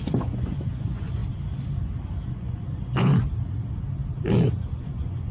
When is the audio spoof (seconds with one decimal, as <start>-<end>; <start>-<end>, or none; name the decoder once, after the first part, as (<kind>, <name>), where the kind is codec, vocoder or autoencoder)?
0.0-1.2 (vocoder, Vocos); 2.3-3.1; 4.7-5.3